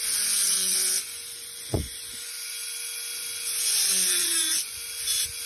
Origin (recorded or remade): remade